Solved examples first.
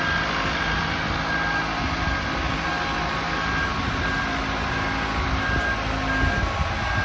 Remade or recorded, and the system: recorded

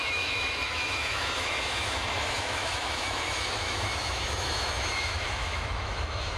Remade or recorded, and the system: remade, autoencoder, DAC-VAE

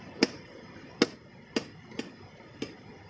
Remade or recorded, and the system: recorded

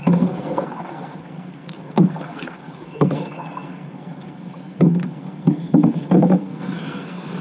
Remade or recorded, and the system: remade, codec, SNAC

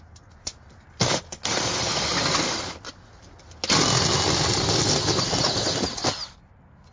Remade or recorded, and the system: recorded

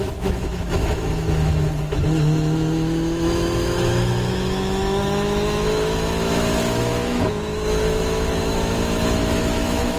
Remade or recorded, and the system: remade, autoencoder, DAC-VAE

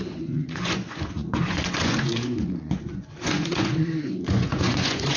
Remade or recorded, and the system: remade, vocoder, Vocos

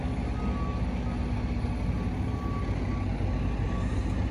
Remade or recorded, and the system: recorded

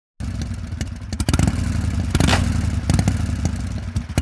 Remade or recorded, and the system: recorded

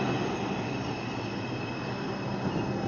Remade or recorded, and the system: recorded